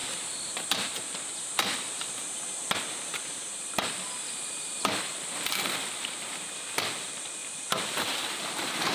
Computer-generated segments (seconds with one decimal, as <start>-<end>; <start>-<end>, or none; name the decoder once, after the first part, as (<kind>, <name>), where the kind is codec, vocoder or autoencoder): 0.0-8.9 (vocoder, BigVGAN v2)